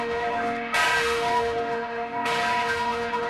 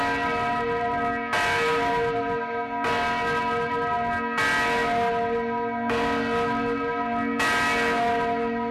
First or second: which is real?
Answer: second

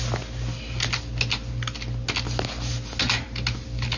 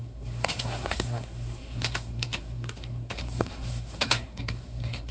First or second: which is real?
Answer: first